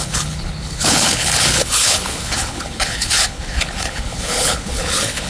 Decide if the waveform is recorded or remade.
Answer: remade